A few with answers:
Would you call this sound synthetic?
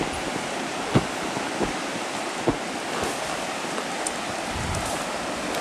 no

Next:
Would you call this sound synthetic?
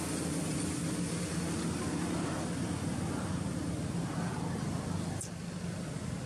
no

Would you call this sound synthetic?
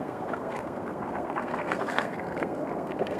yes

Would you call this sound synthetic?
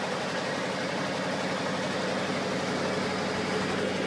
no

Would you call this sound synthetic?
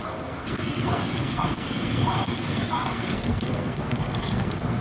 yes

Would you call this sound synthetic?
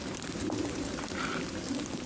no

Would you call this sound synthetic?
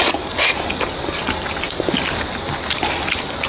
no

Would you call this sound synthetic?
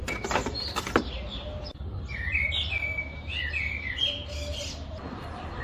no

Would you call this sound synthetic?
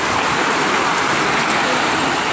no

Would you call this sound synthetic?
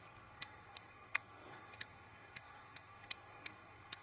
yes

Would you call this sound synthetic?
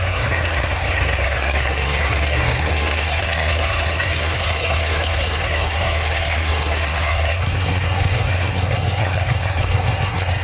yes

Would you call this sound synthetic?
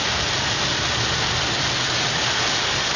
no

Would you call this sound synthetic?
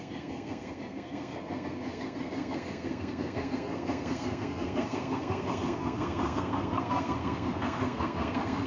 yes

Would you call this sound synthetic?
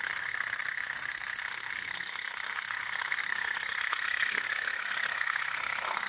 yes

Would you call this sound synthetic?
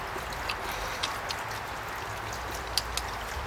no